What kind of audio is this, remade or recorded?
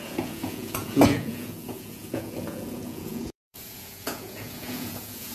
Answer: remade